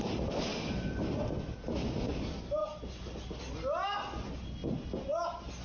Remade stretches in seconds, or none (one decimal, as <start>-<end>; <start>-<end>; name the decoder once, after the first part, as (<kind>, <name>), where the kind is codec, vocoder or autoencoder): none